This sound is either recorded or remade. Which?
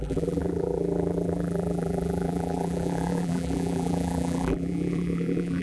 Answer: remade